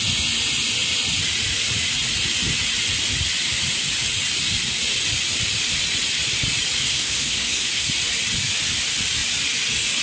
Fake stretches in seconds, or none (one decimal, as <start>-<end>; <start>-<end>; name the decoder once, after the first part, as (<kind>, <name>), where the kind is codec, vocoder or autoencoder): 6.8-7.9 (codec, SNAC)